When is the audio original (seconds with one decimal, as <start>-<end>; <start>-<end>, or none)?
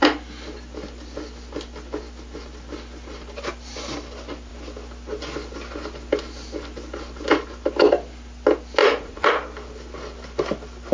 0.0-8.8; 9.3-10.9